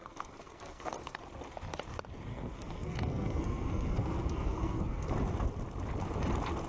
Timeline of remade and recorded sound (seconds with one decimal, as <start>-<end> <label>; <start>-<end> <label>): 0.0-1.2 remade; 1.2-2.3 recorded; 2.3-5.1 remade; 5.1-6.7 recorded

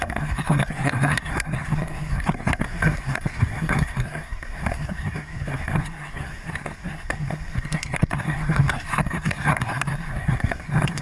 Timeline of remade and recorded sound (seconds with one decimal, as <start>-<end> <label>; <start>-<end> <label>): 0.0-11.0 remade